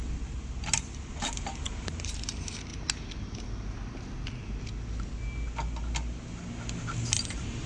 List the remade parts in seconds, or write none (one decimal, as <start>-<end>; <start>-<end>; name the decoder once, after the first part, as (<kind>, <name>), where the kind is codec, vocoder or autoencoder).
1.2-2.7 (vocoder, BigVGAN v2); 7.1-7.7